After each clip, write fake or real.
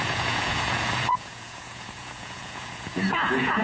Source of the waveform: fake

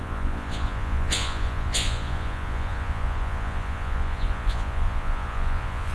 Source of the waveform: fake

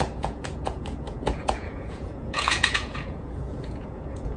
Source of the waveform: fake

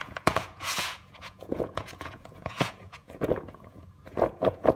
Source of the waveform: fake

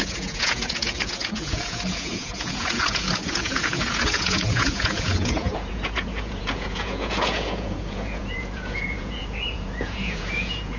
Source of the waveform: fake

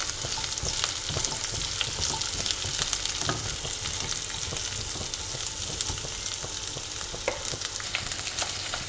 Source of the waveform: real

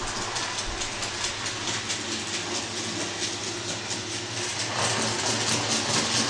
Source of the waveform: real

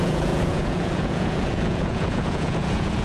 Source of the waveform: fake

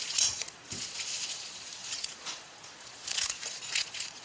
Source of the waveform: fake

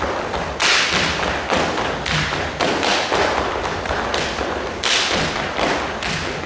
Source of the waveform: real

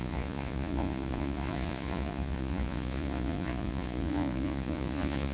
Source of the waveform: fake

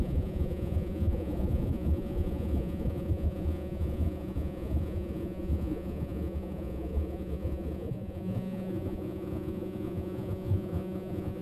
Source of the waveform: fake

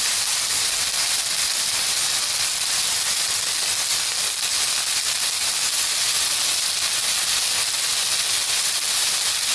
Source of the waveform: real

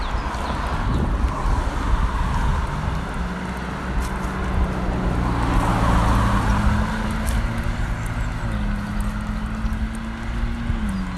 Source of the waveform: real